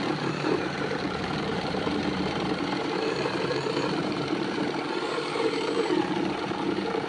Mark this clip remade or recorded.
remade